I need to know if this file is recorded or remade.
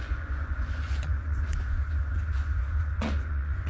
remade